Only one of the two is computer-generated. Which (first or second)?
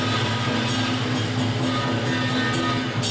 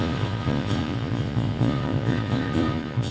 second